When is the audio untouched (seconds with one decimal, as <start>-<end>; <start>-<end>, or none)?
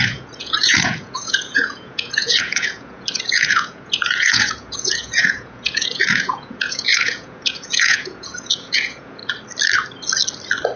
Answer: 9.2-10.8